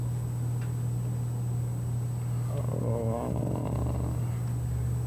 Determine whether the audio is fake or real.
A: real